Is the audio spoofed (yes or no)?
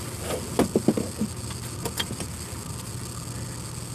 no